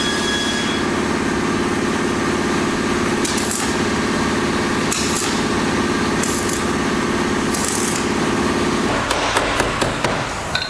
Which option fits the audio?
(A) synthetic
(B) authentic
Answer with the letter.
B